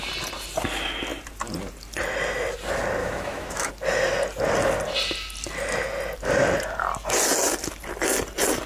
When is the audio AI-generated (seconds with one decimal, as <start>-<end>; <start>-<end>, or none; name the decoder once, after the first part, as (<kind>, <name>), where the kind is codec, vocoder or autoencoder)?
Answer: 3.0-3.7 (autoencoder, DAC-VAE)